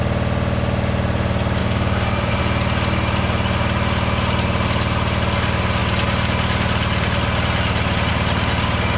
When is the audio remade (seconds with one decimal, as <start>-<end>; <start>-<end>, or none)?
1.6-2.4